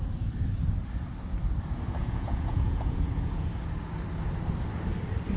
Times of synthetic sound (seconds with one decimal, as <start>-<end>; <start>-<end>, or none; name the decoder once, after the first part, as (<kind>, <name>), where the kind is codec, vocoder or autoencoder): 2.0-3.5 (vocoder, Vocos)